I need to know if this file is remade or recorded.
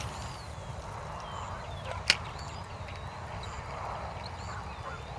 recorded